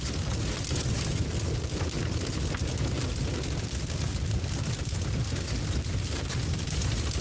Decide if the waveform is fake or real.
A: real